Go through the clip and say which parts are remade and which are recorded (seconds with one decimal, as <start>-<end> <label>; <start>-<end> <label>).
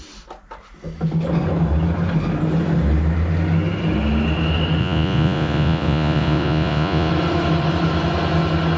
0.0-4.8 recorded; 4.8-7.1 remade; 7.1-8.8 recorded